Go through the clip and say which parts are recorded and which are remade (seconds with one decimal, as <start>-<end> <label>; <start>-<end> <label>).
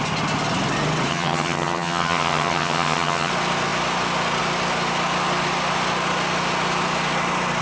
0.0-1.1 recorded; 1.1-3.3 remade; 3.3-7.6 recorded